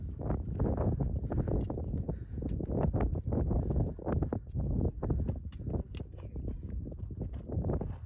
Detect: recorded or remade recorded